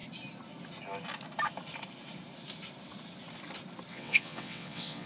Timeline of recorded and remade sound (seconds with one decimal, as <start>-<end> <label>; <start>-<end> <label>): 0.0-3.9 recorded; 3.9-5.1 remade